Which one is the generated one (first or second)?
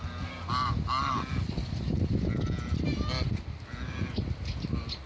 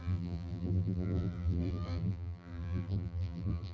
second